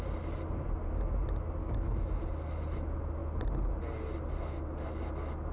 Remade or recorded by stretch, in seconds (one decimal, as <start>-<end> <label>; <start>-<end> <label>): 0.0-1.6 recorded; 1.6-2.2 remade; 2.2-5.5 recorded